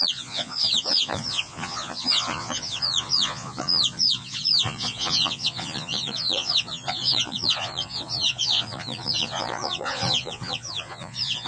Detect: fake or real fake